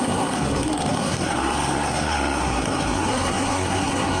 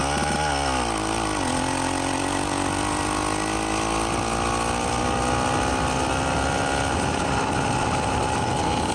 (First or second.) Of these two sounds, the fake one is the first